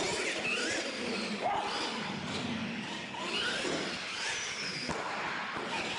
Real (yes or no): yes